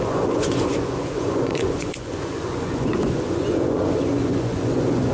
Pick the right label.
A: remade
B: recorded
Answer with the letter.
A